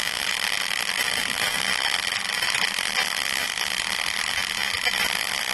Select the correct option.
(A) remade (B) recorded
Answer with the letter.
A